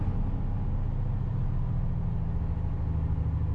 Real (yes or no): yes